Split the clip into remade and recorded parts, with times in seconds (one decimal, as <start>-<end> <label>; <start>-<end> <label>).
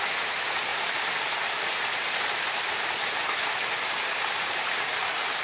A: 0.0-5.4 remade